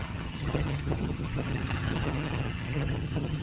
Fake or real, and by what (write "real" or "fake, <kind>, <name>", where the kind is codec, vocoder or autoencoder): fake, vocoder, HiFi-GAN